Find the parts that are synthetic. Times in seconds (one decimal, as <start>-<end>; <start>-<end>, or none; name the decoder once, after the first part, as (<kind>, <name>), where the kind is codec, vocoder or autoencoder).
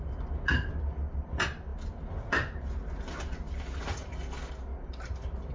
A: none